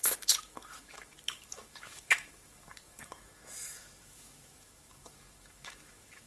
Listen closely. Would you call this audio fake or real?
fake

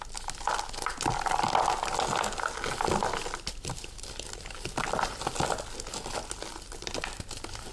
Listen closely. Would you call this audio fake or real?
real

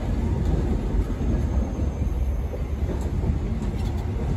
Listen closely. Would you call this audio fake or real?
real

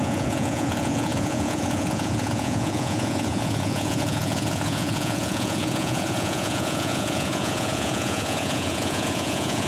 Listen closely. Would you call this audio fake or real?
fake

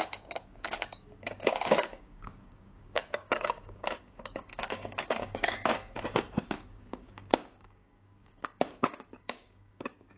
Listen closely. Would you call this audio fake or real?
fake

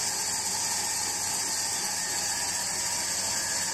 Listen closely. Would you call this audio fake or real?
real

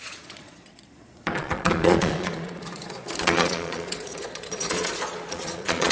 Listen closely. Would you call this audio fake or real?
fake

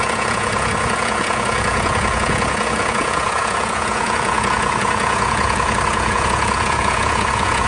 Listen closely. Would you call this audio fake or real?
fake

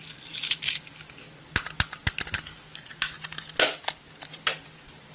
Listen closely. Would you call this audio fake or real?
real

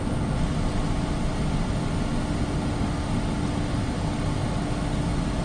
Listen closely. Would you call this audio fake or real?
real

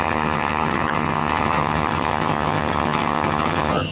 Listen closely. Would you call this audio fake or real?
fake